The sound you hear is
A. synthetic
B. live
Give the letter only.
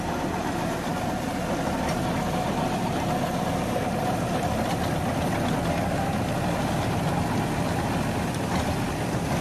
B